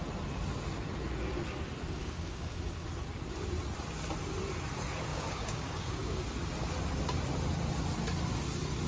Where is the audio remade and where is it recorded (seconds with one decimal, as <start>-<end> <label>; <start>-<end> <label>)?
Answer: 0.0-2.0 recorded; 2.0-2.5 remade; 2.5-5.1 recorded; 5.1-6.2 remade; 6.2-8.9 recorded